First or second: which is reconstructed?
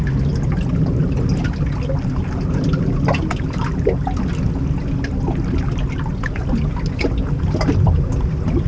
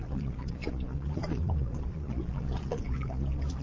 second